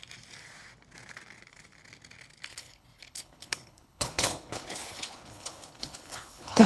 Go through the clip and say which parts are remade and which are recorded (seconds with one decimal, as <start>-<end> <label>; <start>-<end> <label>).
0.0-2.5 recorded; 2.5-6.7 remade